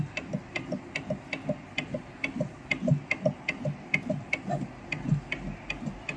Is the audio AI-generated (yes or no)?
no